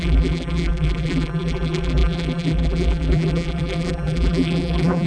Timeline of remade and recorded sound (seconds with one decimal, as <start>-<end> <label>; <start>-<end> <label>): 0.0-5.1 remade